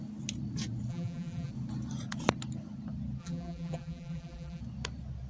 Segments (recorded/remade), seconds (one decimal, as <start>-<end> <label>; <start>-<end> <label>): 0.0-0.9 recorded; 0.9-1.5 remade; 1.5-3.2 recorded; 3.2-4.6 remade; 4.6-5.3 recorded